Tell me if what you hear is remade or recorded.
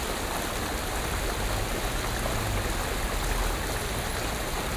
recorded